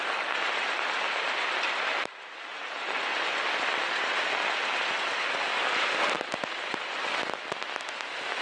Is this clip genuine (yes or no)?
yes